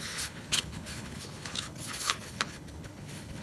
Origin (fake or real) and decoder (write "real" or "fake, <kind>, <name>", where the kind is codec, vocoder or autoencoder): fake, codec, HILCodec